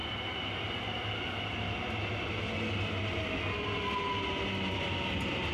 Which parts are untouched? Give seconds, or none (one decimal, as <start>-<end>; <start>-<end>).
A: 0.0-5.5